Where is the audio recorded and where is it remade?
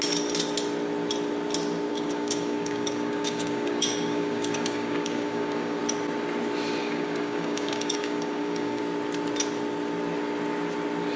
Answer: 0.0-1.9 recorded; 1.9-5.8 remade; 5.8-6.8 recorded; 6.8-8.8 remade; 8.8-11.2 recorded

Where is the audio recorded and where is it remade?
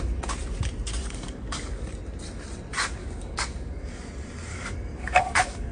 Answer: 0.0-1.0 recorded; 1.0-1.9 remade; 1.9-3.0 recorded; 3.0-4.0 remade; 4.0-4.5 recorded; 4.5-5.7 remade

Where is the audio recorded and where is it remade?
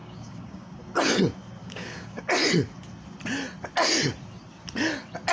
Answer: 0.0-0.8 remade; 0.8-1.6 recorded; 1.6-2.2 remade; 2.2-5.3 recorded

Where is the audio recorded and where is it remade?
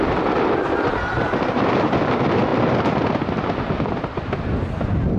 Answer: 0.0-5.2 recorded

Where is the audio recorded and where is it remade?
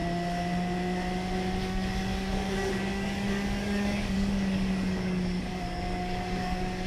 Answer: 0.0-1.6 recorded; 1.6-6.9 remade